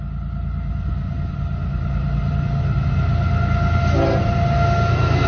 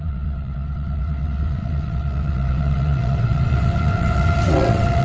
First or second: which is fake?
second